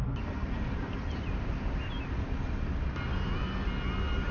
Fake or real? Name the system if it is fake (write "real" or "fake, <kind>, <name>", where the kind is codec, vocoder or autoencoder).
real